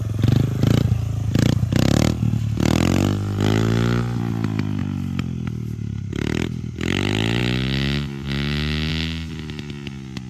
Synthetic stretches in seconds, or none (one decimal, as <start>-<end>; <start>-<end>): none